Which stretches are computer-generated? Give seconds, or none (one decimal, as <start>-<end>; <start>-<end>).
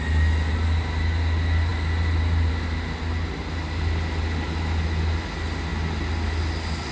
none